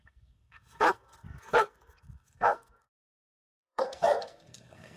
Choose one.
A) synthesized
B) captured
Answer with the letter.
A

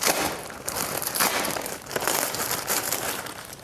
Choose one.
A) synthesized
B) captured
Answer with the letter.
A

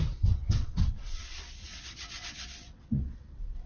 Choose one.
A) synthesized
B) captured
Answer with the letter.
A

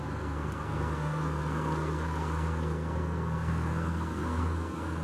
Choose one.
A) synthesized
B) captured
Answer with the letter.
A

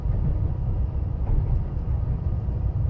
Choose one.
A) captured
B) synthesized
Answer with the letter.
B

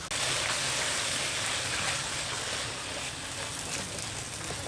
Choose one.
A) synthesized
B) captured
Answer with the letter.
B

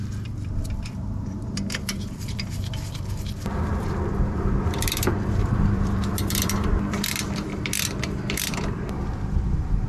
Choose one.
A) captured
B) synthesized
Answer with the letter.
B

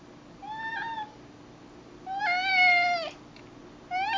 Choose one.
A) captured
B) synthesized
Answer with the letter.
A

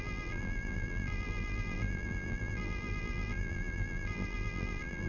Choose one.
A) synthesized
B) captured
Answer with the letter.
A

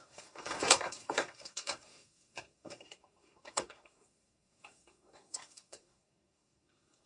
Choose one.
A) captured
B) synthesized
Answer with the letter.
B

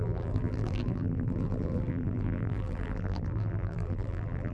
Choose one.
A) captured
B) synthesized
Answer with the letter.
B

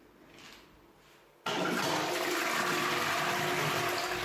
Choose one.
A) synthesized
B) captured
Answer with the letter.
B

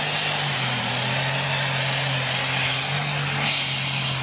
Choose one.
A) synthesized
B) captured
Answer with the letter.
B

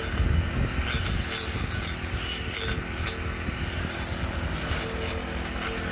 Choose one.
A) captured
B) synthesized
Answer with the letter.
A